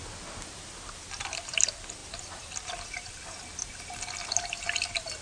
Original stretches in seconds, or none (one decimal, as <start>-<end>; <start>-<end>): 0.0-2.0; 3.1-5.2